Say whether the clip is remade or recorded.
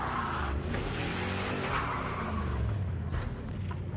recorded